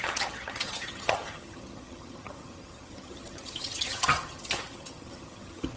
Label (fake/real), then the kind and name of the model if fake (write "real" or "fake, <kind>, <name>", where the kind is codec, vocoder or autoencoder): fake, vocoder, HiFi-GAN